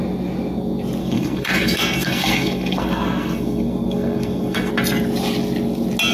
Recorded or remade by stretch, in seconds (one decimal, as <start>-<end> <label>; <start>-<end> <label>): 0.0-1.0 recorded; 1.0-4.7 remade; 4.7-6.1 recorded